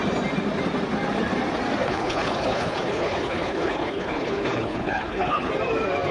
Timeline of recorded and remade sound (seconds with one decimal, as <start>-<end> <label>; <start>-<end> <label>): 0.0-1.8 recorded; 1.8-5.5 remade; 5.5-6.1 recorded